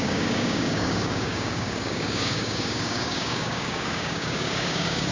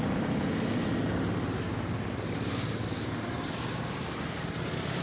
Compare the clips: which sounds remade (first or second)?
first